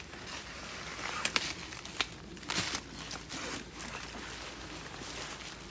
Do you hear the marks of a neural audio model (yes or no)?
no